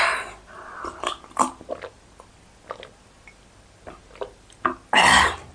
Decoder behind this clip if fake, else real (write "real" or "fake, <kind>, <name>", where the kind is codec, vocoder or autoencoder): real